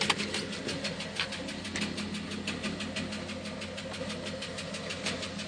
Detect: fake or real real